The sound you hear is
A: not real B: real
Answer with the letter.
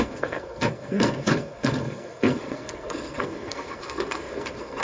A